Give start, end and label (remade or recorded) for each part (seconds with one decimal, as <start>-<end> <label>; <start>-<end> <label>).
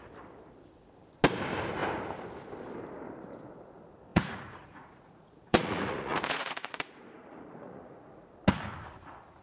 0.0-4.1 recorded; 4.1-8.3 remade; 8.3-9.4 recorded